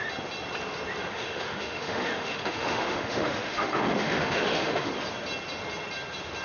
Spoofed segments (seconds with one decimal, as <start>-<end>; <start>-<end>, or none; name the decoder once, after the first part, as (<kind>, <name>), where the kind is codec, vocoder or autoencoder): 1.1-4.9 (autoencoder, DAC-VAE)